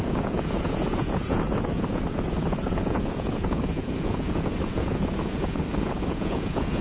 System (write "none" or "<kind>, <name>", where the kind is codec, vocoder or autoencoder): vocoder, Vocos